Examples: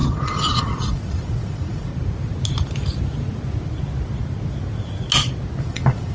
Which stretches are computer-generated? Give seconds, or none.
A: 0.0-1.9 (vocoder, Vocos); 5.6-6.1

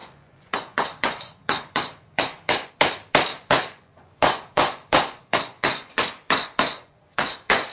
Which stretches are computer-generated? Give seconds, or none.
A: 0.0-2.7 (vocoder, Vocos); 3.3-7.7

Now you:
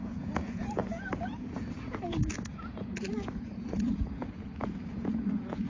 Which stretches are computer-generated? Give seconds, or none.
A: 0.0-5.7 (vocoder, Vocos)